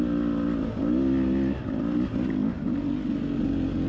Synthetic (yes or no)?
no